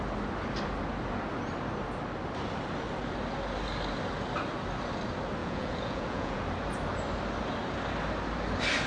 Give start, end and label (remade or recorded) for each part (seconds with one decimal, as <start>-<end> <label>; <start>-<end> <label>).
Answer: 0.0-5.4 recorded; 5.4-6.4 remade; 6.4-8.9 recorded